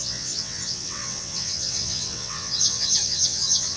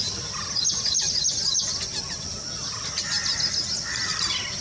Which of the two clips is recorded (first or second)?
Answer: second